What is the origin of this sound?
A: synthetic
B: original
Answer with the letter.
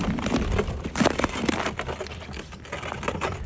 B